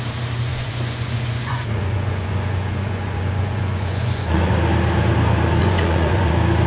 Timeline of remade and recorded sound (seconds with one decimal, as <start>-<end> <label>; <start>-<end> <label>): 0.0-0.5 recorded; 0.5-4.5 remade; 4.5-5.6 recorded; 5.6-6.3 remade; 6.3-6.7 recorded